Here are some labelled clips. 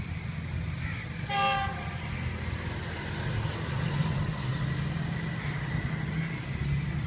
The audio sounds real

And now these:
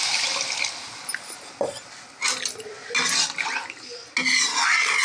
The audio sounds real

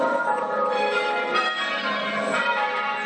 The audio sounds fake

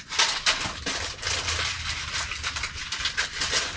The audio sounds real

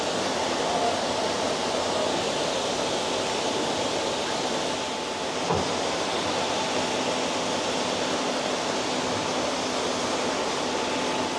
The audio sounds real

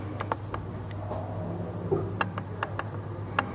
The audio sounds real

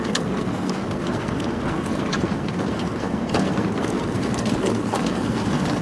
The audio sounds fake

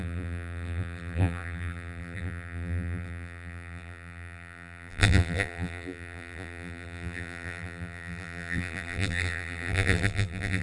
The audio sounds fake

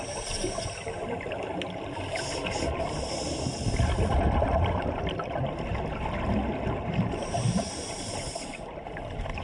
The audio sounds real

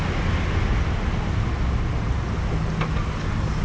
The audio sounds real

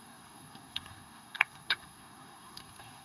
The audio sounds fake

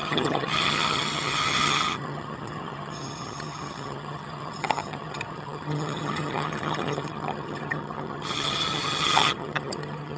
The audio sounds fake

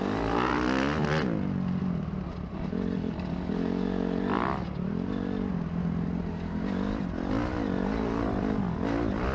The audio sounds real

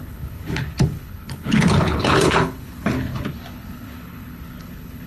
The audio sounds fake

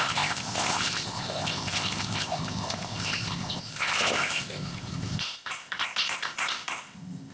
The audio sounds fake